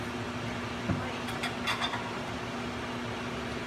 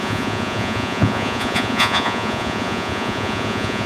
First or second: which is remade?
second